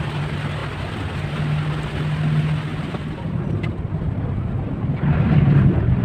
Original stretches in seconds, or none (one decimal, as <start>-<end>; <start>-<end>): 0.0-0.6; 1.3-2.7; 3.5-6.0